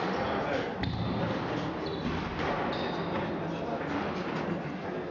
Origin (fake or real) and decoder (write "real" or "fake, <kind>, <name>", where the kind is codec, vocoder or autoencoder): real